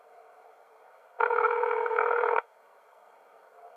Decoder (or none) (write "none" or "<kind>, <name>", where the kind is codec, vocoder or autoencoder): codec, SNAC